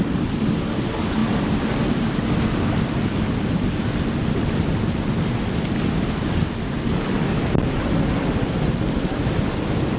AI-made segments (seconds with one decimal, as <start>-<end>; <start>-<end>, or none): none